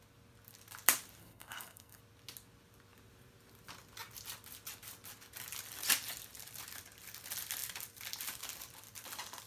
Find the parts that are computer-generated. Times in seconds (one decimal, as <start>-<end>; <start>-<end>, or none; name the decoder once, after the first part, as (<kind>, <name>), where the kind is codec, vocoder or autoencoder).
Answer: 1.2-2.0 (codec, SNAC)